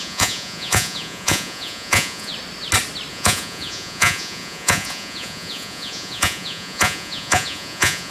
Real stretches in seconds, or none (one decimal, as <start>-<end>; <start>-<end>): 2.3-3.1